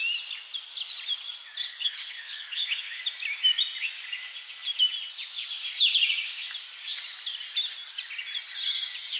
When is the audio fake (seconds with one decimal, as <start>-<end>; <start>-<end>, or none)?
1.7-3.0